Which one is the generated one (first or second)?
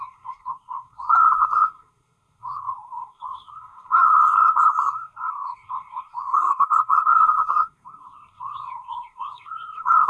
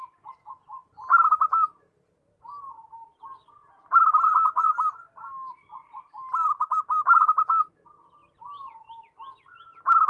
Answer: first